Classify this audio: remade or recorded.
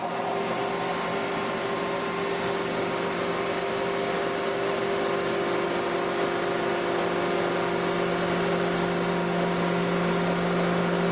recorded